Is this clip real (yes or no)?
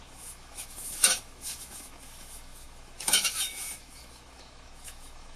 no